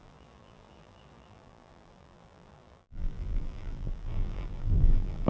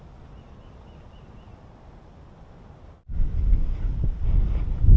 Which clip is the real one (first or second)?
second